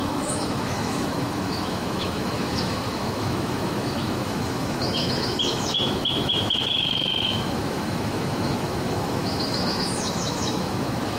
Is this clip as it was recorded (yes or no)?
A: no